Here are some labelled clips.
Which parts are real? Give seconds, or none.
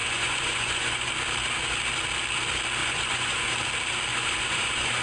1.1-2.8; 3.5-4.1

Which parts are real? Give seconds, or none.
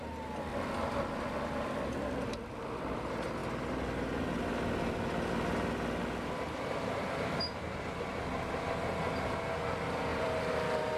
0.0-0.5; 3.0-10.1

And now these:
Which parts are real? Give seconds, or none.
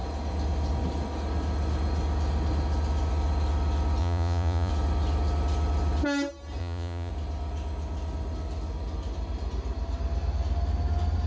0.0-4.0; 4.7-6.6; 7.1-11.3